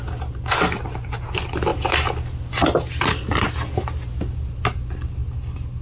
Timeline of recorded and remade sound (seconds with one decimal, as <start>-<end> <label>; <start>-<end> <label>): 0.0-5.2 recorded; 5.2-5.8 remade